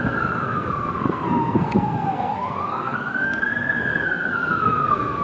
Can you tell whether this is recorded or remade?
remade